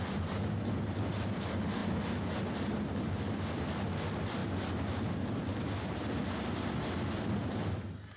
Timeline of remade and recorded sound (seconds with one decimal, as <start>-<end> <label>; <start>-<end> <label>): 0.0-8.2 recorded